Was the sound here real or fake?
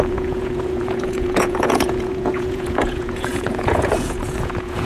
fake